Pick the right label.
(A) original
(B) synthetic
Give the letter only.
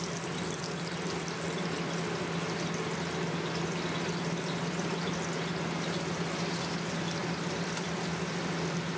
A